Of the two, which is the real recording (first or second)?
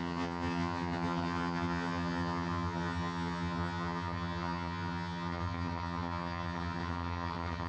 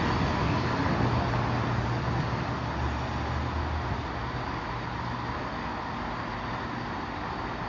second